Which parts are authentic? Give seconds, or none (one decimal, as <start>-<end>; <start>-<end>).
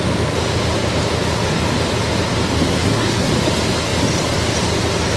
0.0-2.7; 3.3-5.2